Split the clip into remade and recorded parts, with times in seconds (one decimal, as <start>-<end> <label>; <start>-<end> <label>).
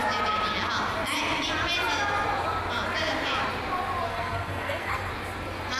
0.0-4.1 recorded; 4.1-5.1 remade; 5.1-5.8 recorded